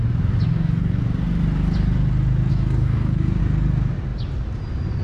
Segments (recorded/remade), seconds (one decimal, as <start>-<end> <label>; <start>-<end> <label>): 0.0-0.5 recorded; 0.5-1.0 remade; 1.0-2.5 recorded; 2.5-3.4 remade; 3.4-5.0 recorded